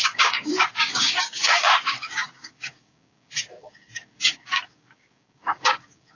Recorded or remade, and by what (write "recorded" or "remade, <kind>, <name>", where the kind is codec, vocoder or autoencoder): remade, codec, DAC